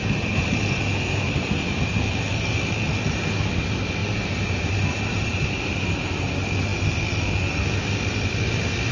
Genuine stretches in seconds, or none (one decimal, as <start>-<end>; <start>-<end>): 1.9-4.0; 6.3-8.9